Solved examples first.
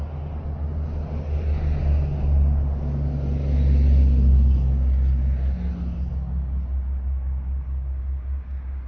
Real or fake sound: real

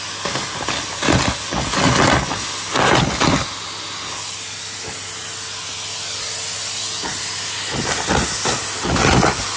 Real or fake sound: real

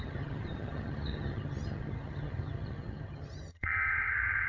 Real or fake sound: fake